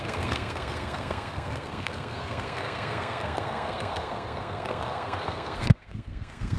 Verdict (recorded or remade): remade